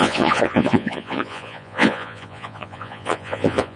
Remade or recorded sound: remade